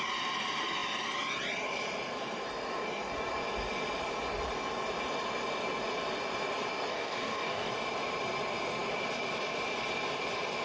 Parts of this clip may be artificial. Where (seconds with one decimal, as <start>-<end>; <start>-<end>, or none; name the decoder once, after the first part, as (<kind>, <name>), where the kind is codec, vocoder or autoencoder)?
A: 6.9-7.7 (codec, DAC)